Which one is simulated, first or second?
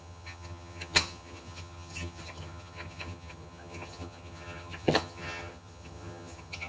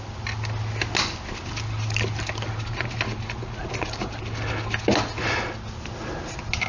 first